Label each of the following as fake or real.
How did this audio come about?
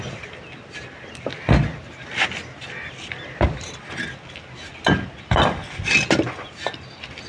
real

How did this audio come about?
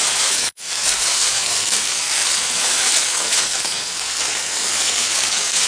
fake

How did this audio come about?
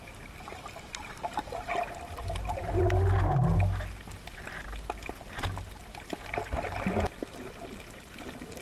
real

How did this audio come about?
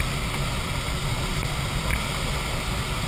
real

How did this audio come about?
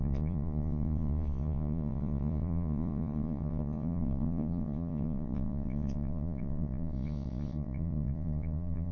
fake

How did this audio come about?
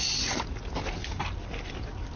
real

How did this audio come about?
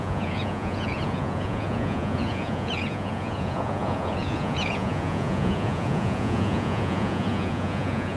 fake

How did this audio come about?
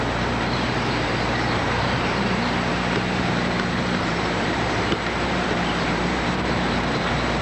fake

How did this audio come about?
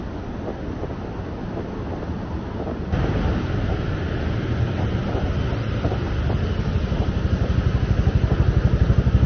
real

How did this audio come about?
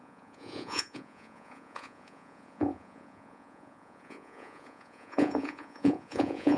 fake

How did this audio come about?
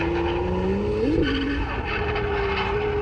real